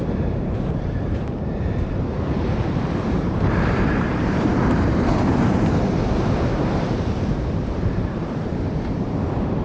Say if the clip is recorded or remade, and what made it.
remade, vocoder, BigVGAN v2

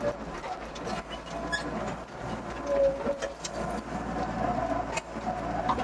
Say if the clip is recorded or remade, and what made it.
recorded